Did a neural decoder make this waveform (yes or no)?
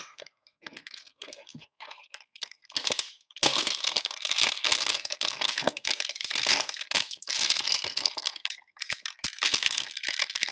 yes